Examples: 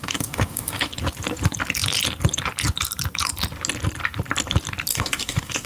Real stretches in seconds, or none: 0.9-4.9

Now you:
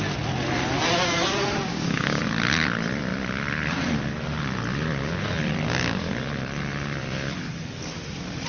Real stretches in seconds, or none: 0.0-1.7; 2.2-8.5